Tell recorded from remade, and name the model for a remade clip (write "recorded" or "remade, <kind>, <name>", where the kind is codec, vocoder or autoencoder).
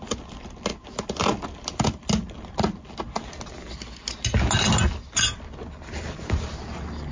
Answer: recorded